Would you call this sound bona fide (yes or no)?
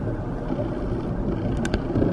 yes